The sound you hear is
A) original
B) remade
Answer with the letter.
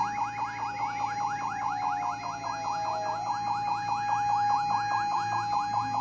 A